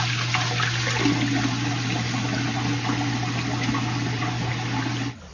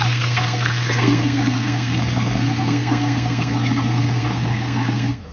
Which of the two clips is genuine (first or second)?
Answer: first